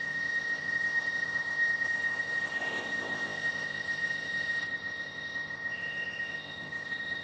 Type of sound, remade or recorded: remade